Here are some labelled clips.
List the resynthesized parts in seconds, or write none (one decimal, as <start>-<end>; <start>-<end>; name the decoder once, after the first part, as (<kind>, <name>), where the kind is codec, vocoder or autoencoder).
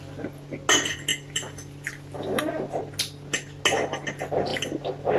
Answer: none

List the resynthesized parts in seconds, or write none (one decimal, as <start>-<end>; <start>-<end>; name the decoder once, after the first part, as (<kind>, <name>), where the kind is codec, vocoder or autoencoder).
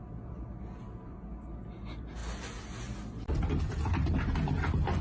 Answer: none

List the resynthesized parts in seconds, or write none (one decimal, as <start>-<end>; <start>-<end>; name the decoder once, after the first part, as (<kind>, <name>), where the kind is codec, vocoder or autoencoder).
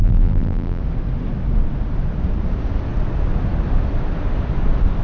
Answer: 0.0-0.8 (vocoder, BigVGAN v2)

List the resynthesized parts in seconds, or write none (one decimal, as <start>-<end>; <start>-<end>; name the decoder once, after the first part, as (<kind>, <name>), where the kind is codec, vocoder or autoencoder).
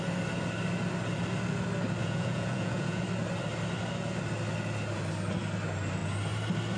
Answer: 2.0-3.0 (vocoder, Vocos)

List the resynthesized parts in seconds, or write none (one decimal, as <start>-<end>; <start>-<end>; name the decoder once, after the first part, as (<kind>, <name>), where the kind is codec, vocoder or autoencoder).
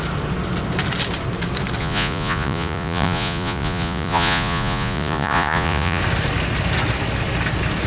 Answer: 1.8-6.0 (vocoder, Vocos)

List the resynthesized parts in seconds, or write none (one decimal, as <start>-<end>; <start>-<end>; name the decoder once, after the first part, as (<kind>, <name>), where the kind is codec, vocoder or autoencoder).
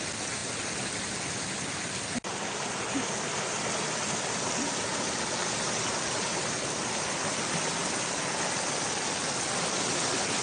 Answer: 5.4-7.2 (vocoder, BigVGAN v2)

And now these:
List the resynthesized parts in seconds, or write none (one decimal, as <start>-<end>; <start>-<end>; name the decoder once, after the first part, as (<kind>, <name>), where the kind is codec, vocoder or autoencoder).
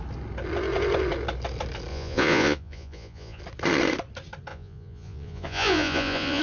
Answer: 1.9-3.4 (vocoder, Vocos); 4.5-6.4